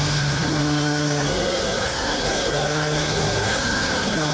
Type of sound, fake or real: fake